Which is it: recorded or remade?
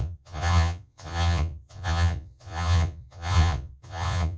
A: remade